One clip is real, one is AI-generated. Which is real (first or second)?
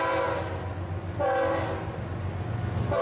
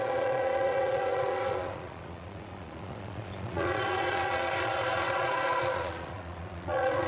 first